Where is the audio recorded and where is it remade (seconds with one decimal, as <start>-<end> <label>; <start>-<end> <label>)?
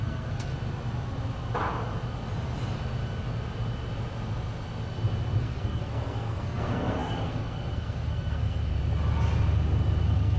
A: 0.0-0.5 remade; 0.5-5.4 recorded; 5.4-8.8 remade; 8.8-10.0 recorded; 10.0-10.4 remade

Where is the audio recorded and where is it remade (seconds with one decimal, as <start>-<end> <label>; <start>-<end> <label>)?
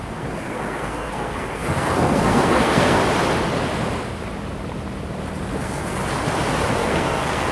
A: 0.0-3.0 remade; 3.0-5.6 recorded; 5.6-6.0 remade; 6.0-6.7 recorded; 6.7-7.5 remade